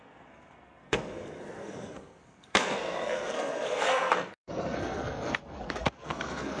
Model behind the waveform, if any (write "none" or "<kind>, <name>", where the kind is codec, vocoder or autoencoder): codec, SNAC